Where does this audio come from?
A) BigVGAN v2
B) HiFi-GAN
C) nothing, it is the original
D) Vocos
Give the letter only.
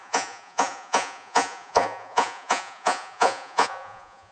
D